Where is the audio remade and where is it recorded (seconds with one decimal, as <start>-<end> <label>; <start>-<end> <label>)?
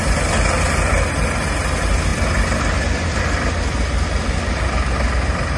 0.0-5.6 recorded